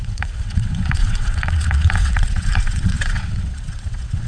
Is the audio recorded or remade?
remade